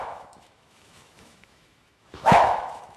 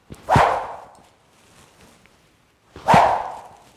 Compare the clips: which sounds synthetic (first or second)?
first